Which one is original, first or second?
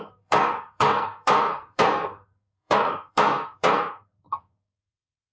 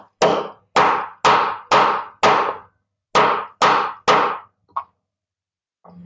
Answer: second